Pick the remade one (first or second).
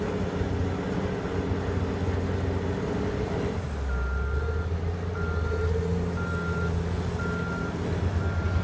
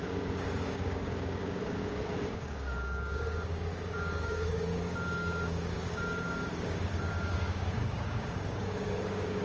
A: second